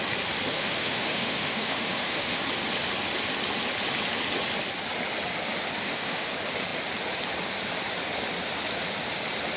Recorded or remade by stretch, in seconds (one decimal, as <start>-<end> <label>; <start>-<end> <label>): 0.0-0.5 recorded; 0.5-2.4 remade; 2.4-5.8 recorded; 5.8-6.3 remade; 6.3-9.6 recorded

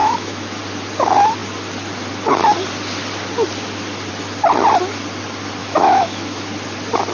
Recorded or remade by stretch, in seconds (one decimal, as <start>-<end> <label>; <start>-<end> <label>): 0.0-0.6 remade; 0.6-5.6 recorded; 5.6-6.5 remade; 6.5-7.1 recorded

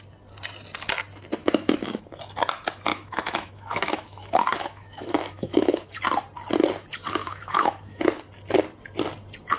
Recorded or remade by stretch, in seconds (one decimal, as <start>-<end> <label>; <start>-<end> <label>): 0.0-1.4 recorded; 1.4-2.0 remade; 2.0-2.9 recorded; 2.9-6.0 remade; 6.0-7.2 recorded; 7.2-8.0 remade; 8.0-9.6 recorded

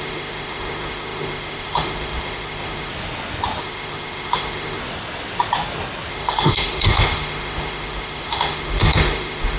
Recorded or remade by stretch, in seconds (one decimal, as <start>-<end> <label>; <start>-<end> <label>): 0.0-2.9 remade; 2.9-3.6 recorded; 3.6-4.8 remade; 4.8-6.1 recorded; 6.1-9.6 remade

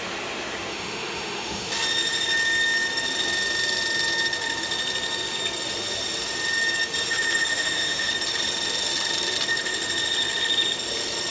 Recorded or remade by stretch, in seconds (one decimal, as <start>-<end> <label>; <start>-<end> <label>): 0.0-0.7 recorded; 0.7-1.7 remade; 1.7-7.5 recorded; 7.5-8.1 remade; 8.1-11.3 recorded